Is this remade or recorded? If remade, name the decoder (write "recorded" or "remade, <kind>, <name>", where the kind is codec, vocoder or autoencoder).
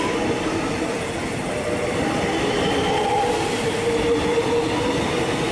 recorded